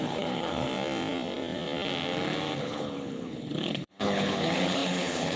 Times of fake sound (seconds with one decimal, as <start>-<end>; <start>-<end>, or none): 0.0-0.7; 2.6-5.4